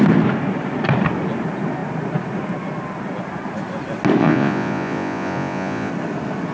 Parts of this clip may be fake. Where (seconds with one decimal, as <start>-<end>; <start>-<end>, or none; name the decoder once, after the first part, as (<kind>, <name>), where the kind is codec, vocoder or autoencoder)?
4.2-5.9 (vocoder, Vocos)